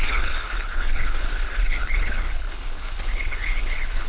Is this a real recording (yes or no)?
no